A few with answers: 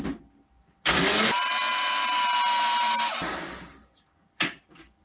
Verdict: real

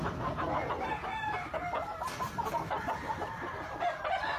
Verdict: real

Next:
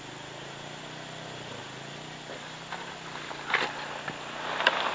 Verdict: real